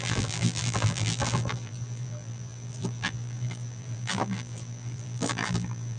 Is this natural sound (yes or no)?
no